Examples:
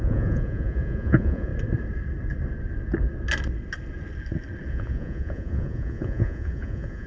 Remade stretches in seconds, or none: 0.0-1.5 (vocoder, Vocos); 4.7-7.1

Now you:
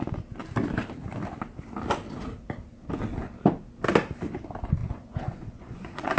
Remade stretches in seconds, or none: 4.8-6.2 (vocoder, Vocos)

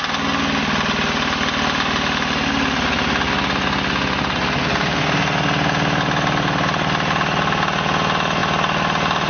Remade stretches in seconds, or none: none

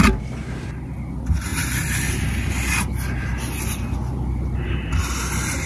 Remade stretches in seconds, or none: none